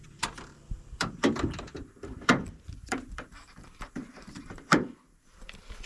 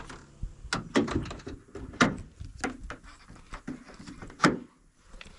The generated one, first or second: first